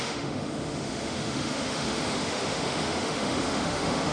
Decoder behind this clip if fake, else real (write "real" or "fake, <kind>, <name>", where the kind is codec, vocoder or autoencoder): fake, autoencoder, DAC-VAE